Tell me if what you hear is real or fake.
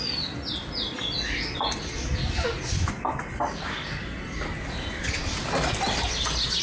real